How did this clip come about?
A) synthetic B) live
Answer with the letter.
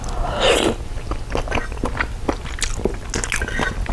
B